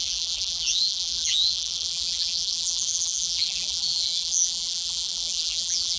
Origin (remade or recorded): remade